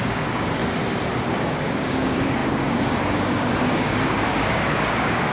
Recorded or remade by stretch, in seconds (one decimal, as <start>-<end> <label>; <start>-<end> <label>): 0.0-0.6 remade; 0.6-1.4 recorded; 1.4-5.3 remade

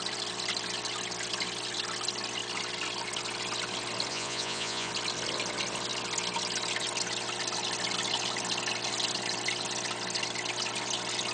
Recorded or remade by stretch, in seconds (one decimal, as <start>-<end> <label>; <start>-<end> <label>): 0.0-4.1 recorded; 4.1-4.9 remade; 4.9-11.3 recorded

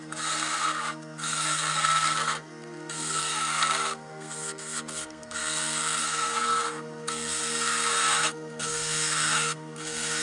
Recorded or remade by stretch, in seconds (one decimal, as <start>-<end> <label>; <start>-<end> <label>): 0.0-10.2 remade

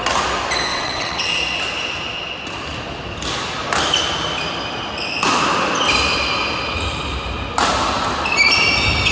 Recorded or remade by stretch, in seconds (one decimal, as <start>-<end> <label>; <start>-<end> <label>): 0.0-0.7 recorded; 0.7-1.3 remade; 1.3-9.1 recorded

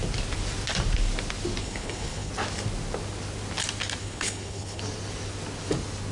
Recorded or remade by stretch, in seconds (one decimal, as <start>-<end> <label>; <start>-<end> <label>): 0.0-1.6 recorded; 1.6-2.3 remade; 2.3-4.0 recorded; 4.0-4.8 remade; 4.8-6.1 recorded

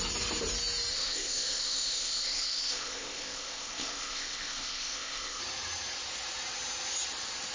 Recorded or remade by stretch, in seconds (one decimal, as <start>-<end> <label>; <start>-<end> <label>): 0.0-0.9 recorded; 0.9-5.4 remade; 5.4-7.5 recorded